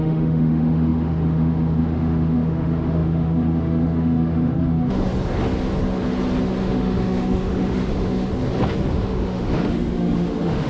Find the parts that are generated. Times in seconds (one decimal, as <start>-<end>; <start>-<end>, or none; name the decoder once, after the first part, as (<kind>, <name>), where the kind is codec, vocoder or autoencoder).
0.0-5.1 (autoencoder, DAC-VAE); 6.6-8.3; 8.9-10.7

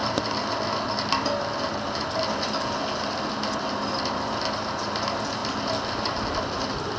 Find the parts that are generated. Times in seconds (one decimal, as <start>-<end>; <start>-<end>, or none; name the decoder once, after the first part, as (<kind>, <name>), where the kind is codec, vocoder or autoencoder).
none